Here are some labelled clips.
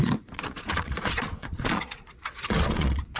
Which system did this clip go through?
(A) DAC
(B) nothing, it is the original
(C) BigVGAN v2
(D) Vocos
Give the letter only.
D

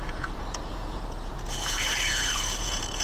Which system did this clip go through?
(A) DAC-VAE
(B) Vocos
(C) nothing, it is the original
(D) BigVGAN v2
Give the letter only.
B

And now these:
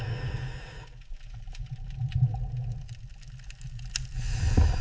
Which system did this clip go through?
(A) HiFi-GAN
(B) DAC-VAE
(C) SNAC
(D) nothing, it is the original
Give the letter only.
D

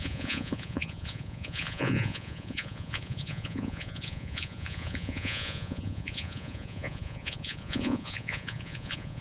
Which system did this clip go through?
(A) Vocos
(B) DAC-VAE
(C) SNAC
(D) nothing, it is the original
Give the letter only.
A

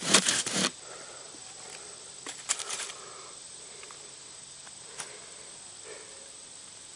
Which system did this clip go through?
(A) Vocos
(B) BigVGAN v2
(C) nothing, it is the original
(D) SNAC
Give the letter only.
B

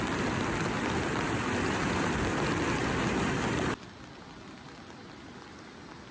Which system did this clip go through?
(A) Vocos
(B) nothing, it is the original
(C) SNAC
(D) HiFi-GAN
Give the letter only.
B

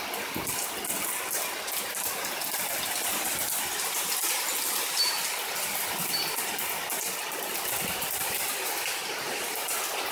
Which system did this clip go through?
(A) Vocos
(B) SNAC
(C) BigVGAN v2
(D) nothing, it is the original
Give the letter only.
D